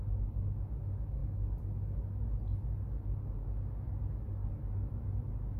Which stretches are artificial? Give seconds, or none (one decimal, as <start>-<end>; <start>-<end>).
none